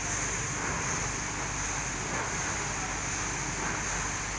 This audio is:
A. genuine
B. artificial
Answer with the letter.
A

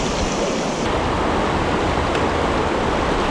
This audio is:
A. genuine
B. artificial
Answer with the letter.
A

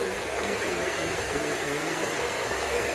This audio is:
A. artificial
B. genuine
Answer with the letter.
A